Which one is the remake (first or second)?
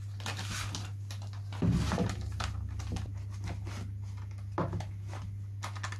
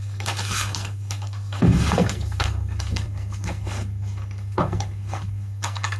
second